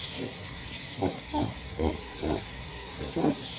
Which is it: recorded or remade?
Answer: remade